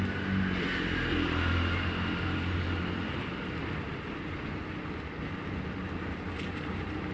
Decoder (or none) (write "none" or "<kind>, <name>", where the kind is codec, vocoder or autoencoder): vocoder, BigVGAN v2